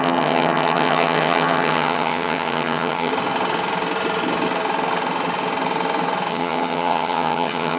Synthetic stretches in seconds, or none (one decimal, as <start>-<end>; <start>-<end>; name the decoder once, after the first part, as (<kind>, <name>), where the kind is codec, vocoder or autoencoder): 0.0-3.1 (vocoder, HiFi-GAN); 6.3-7.8